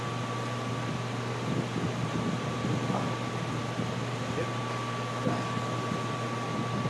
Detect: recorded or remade recorded